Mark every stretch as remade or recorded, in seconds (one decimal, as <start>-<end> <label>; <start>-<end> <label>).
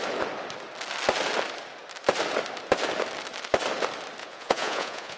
0.0-4.2 recorded; 4.2-5.2 remade